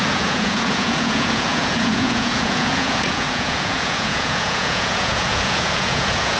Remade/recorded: remade